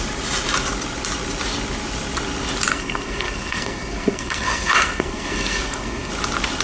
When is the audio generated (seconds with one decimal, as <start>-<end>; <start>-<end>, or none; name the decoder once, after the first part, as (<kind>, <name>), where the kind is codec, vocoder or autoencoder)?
2.7-6.1 (codec, SNAC)